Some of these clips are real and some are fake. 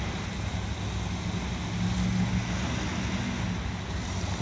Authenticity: real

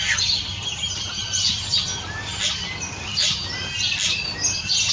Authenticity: real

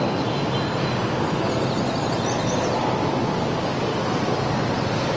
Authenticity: real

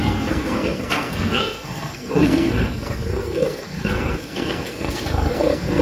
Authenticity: fake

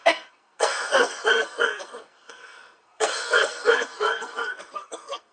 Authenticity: fake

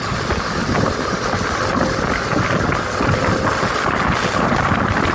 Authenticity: real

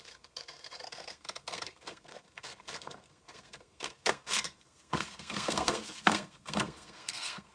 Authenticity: fake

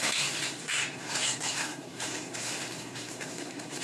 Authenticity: fake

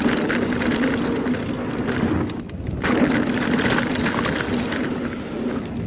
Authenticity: real